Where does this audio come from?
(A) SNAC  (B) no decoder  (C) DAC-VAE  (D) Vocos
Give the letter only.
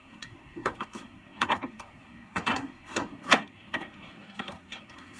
A